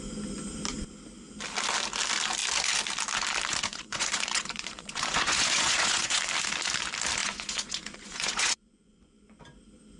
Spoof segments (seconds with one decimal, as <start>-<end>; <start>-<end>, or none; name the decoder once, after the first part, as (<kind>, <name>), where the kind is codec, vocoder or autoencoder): 3.7-6.2 (vocoder, Vocos); 7.2-9.4